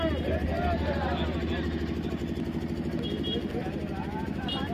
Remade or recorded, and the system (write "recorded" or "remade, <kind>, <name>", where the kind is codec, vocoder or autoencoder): recorded